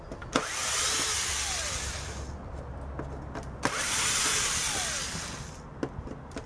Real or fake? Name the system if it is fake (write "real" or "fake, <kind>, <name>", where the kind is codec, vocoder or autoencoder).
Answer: real